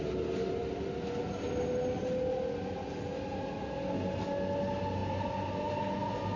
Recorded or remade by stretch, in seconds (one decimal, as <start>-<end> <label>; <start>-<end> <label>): 0.0-6.4 recorded

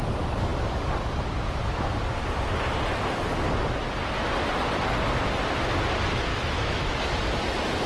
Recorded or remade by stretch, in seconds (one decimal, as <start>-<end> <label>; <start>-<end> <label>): 0.0-6.3 recorded; 6.3-7.0 remade; 7.0-7.9 recorded

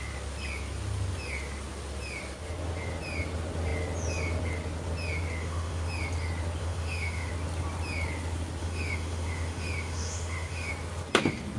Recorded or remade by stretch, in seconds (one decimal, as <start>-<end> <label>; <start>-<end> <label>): 0.0-5.4 recorded; 5.4-5.9 remade; 5.9-6.6 recorded; 6.6-7.3 remade; 7.3-8.6 recorded; 8.6-10.7 remade; 10.7-11.6 recorded

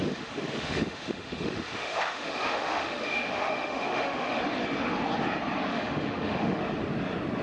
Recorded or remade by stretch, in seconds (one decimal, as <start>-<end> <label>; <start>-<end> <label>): 0.0-4.4 remade; 4.4-5.7 recorded; 5.7-6.6 remade; 6.6-7.4 recorded

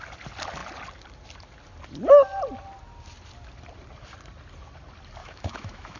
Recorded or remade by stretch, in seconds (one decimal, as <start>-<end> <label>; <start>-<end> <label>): 0.0-5.2 recorded; 5.2-6.0 remade

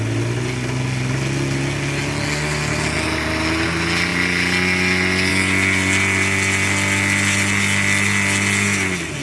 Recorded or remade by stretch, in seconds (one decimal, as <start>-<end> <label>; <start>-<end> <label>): 0.0-9.2 recorded

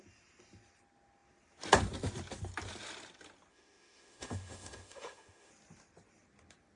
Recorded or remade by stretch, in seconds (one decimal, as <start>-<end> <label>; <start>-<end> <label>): 0.0-3.5 recorded; 3.5-5.5 remade; 5.5-6.8 recorded